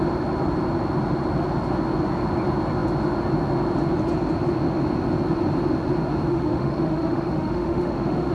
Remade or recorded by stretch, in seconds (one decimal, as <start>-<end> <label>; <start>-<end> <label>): 0.0-6.3 recorded; 6.3-8.3 remade